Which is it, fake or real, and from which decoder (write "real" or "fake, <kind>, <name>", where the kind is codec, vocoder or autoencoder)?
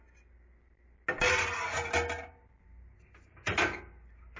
real